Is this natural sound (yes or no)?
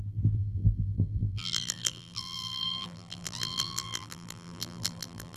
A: no